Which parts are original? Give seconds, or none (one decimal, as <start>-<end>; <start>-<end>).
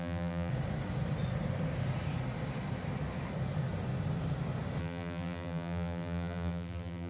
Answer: 0.5-4.8